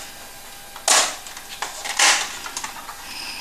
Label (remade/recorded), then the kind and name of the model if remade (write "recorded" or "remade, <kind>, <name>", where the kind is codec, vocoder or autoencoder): recorded